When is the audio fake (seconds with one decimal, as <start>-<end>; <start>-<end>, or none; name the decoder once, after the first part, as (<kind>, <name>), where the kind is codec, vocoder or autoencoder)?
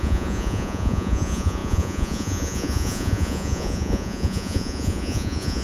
0.0-5.6 (vocoder, Vocos)